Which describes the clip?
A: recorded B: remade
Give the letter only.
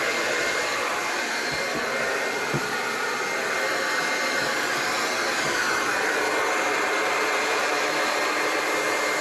A